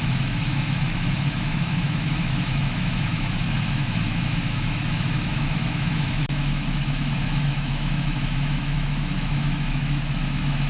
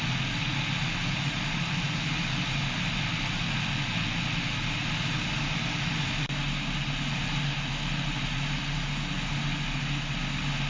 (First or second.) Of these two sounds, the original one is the second